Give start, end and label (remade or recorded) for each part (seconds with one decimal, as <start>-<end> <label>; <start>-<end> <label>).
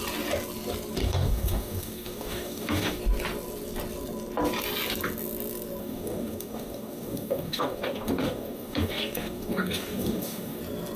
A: 0.0-1.0 recorded; 1.0-3.0 remade; 3.0-5.8 recorded; 5.8-10.6 remade; 10.6-11.0 recorded